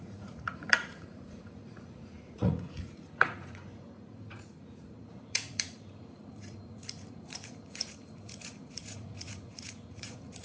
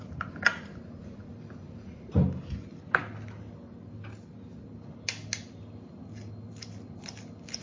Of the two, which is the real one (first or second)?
second